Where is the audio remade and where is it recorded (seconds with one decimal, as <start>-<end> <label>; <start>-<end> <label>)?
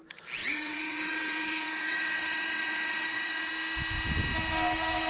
0.0-0.4 recorded; 0.4-3.5 remade; 3.5-5.1 recorded